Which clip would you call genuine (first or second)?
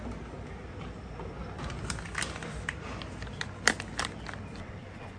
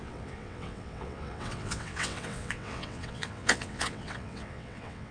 first